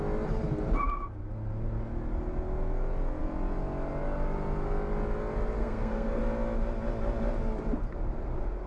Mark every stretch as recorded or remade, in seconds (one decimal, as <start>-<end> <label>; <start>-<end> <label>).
0.0-5.6 recorded; 5.6-6.2 remade; 6.2-8.7 recorded

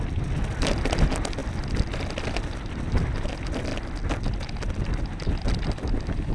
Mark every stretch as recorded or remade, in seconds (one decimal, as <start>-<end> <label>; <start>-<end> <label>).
0.0-6.3 recorded

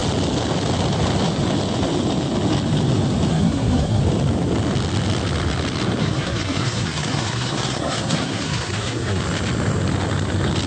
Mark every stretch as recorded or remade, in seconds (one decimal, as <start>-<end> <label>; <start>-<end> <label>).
0.0-3.3 recorded; 3.3-4.0 remade; 4.0-6.0 recorded; 6.0-9.2 remade; 9.2-10.7 recorded

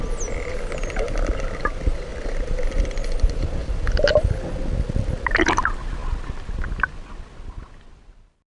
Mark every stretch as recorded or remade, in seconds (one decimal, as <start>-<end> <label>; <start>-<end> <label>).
0.0-8.5 recorded

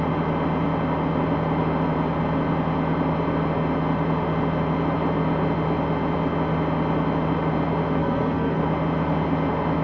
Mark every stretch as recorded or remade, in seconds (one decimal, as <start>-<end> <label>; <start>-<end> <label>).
0.0-8.0 recorded; 8.0-8.6 remade; 8.6-9.8 recorded

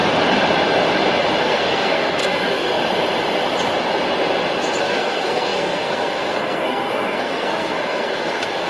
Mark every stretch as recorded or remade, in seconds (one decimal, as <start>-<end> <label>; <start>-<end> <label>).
0.0-1.4 recorded; 1.4-2.8 remade; 2.8-4.8 recorded; 4.8-8.7 remade

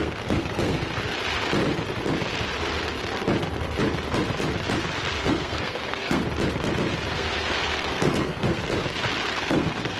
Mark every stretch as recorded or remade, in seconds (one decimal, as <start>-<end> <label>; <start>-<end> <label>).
0.0-0.9 remade; 0.9-5.2 recorded; 5.2-6.2 remade; 6.2-7.1 recorded; 7.1-8.6 remade; 8.6-9.3 recorded; 9.3-10.0 remade